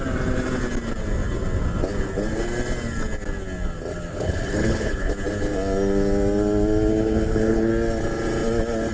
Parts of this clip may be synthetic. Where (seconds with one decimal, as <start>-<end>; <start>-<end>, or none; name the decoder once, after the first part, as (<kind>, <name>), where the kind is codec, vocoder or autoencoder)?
4.1-5.1 (codec, HILCodec); 6.9-7.7